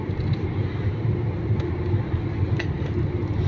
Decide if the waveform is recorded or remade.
recorded